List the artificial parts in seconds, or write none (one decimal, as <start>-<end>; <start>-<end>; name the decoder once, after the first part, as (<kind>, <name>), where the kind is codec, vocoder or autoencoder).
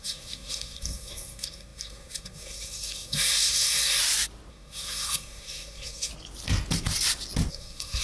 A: 0.0-4.0 (codec, SNAC); 4.5-6.1; 7.5-8.0